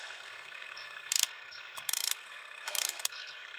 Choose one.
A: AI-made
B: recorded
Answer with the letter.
A